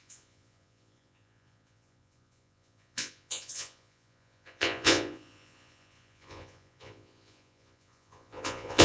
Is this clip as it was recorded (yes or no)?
no